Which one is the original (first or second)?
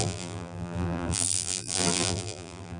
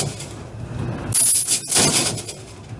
second